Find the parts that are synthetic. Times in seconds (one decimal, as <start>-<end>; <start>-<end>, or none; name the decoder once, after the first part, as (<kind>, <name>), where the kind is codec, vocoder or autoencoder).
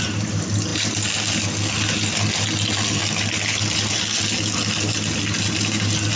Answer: none